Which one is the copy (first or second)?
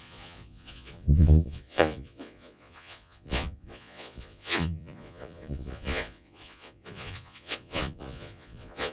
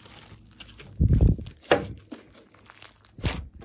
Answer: first